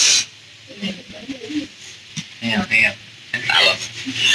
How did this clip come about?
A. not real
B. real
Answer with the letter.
B